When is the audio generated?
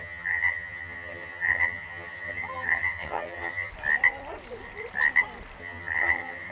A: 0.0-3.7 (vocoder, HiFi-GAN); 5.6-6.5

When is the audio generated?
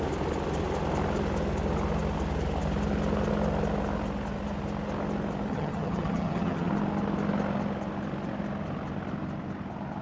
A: 5.5-6.7 (vocoder, HiFi-GAN)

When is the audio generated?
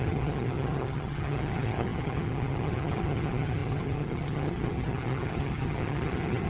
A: 0.0-6.5 (vocoder, HiFi-GAN)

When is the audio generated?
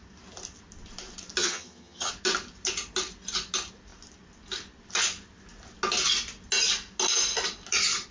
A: 1.4-2.1 (vocoder, HiFi-GAN)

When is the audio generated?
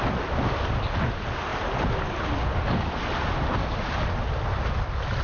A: none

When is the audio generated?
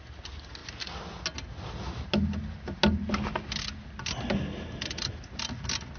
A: none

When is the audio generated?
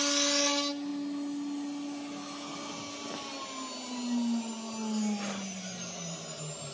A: none